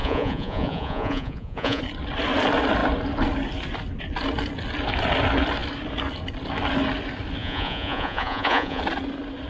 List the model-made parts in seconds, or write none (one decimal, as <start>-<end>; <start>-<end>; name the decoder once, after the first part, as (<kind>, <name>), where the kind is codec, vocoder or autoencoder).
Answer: 0.0-1.8 (vocoder, Vocos); 7.4-8.8